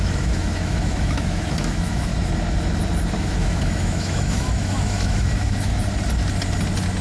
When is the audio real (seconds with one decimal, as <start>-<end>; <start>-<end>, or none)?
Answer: 2.1-3.2; 5.7-7.0